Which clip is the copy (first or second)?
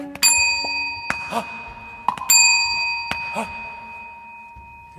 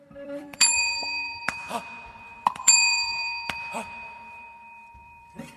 second